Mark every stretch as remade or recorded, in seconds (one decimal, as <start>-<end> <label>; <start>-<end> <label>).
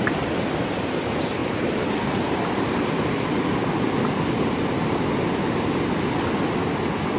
0.0-7.2 recorded